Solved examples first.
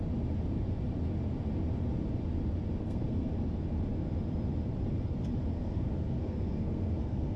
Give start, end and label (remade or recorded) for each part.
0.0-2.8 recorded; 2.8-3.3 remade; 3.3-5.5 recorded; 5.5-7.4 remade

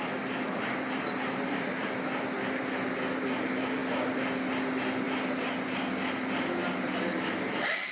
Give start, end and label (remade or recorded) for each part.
0.0-7.9 recorded